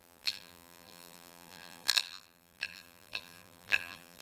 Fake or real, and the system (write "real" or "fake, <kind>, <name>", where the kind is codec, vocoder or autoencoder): fake, vocoder, BigVGAN v2